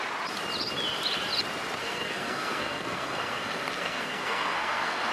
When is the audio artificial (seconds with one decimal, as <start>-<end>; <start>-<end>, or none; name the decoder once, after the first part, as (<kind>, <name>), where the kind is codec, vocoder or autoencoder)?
1.8-5.1 (codec, SNAC)